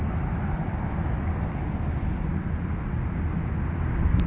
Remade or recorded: recorded